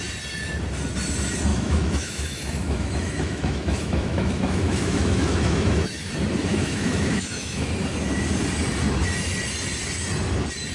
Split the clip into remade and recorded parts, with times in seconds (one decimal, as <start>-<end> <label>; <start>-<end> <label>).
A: 0.0-1.5 recorded; 1.5-6.1 remade; 6.1-6.5 recorded; 6.5-7.7 remade; 7.7-10.7 recorded